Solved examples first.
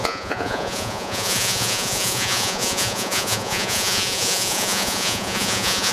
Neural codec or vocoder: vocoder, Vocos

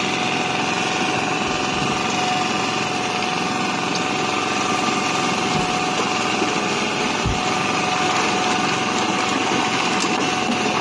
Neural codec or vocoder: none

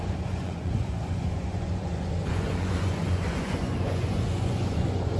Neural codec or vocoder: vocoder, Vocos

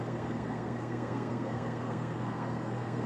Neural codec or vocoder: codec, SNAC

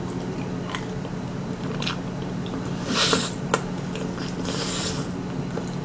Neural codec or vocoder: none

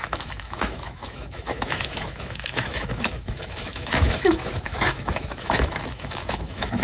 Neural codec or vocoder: autoencoder, DAC-VAE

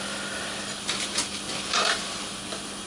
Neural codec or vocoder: none